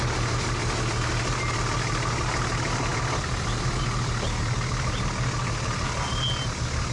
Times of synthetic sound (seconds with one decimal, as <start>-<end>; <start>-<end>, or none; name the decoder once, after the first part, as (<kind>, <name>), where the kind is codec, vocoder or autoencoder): none